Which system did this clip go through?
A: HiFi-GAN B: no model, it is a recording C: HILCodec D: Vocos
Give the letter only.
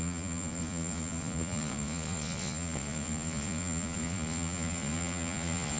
D